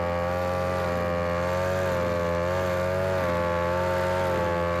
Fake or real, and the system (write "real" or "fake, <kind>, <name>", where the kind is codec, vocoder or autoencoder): real